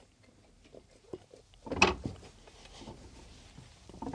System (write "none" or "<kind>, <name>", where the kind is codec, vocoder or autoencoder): none